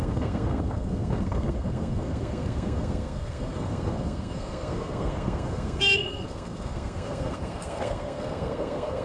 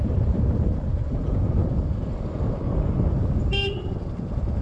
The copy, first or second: first